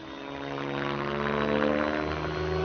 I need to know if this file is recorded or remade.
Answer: recorded